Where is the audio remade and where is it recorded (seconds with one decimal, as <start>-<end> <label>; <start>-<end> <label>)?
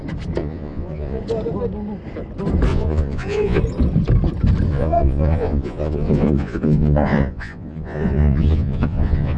0.0-0.4 recorded; 0.4-1.2 remade; 1.2-2.7 recorded; 2.7-3.6 remade; 3.6-4.7 recorded; 4.7-9.4 remade